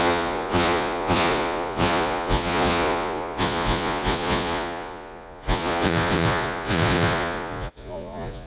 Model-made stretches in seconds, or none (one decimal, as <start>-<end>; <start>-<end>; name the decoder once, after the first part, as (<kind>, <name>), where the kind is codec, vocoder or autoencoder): 0.0-8.5 (vocoder, Vocos)